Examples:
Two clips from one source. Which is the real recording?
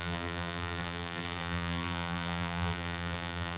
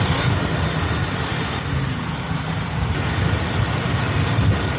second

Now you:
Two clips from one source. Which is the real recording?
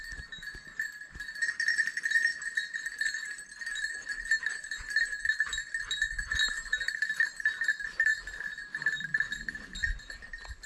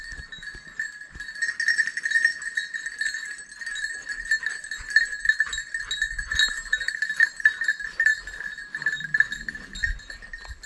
second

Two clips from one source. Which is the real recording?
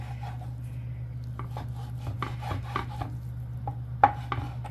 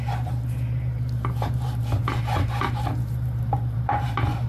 first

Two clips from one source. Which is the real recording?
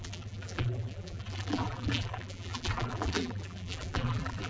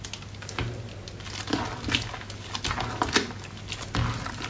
second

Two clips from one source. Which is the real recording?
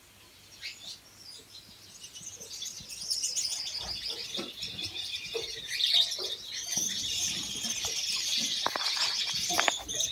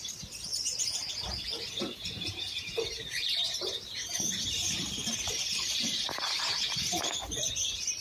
first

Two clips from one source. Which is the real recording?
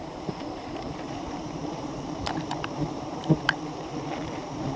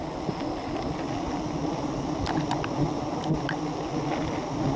second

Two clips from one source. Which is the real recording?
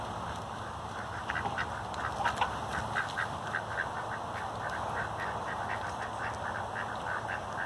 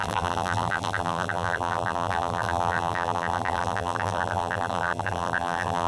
first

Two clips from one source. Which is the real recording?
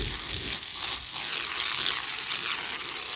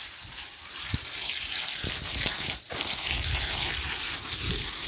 first